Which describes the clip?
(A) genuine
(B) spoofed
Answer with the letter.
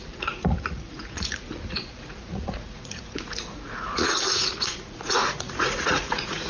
B